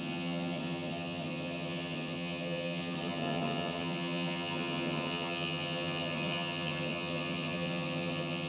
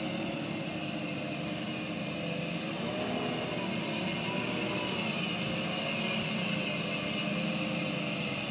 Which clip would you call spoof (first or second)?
first